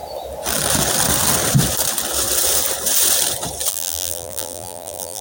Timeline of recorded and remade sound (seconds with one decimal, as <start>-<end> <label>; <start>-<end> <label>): 0.0-3.7 recorded; 3.7-5.2 remade